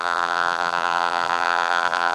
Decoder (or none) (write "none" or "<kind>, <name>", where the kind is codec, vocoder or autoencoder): vocoder, BigVGAN v2